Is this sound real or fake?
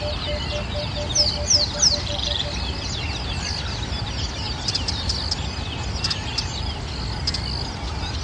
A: real